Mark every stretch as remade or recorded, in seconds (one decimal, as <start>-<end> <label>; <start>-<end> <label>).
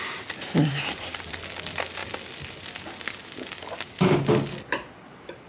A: 0.0-5.5 recorded